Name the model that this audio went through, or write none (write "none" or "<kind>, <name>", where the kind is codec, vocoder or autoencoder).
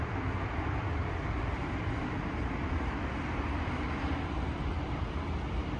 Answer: vocoder, BigVGAN v2